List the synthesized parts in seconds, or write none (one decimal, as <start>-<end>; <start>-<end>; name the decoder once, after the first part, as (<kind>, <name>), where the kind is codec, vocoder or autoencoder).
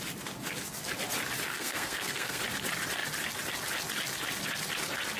1.5-2.4 (codec, SNAC)